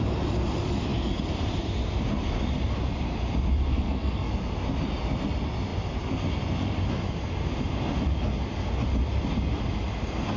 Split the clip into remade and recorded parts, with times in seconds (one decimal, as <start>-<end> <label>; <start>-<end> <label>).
0.0-3.7 recorded; 3.7-4.3 remade; 4.3-10.4 recorded